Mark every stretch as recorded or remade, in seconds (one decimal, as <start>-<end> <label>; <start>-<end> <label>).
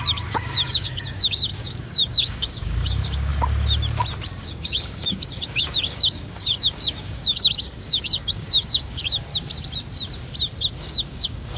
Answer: 0.0-3.3 remade; 3.3-4.4 recorded; 4.4-9.3 remade; 9.3-10.8 recorded; 10.8-11.6 remade